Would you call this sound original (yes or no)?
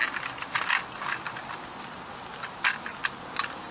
yes